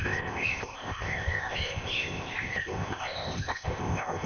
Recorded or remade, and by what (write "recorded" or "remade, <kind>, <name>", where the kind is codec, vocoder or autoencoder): remade, codec, ZipCodec